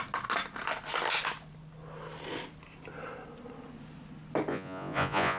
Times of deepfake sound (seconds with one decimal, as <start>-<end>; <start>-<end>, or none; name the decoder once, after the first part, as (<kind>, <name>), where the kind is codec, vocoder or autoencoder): 4.5-5.4 (vocoder, Vocos)